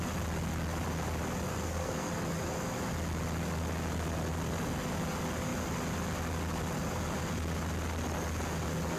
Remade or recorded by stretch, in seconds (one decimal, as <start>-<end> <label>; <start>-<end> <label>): 0.0-1.5 recorded; 1.5-2.1 remade; 2.1-9.0 recorded